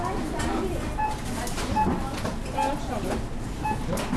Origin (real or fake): real